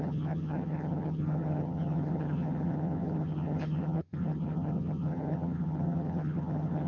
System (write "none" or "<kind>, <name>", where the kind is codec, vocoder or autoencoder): vocoder, HiFi-GAN